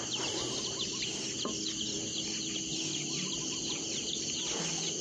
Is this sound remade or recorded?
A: recorded